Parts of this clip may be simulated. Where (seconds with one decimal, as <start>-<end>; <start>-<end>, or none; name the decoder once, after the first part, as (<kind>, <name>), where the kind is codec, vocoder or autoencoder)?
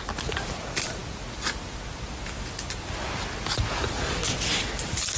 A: none